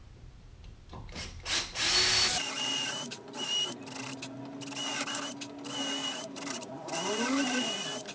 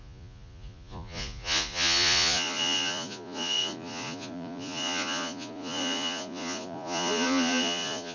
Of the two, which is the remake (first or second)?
second